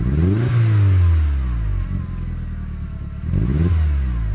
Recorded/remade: recorded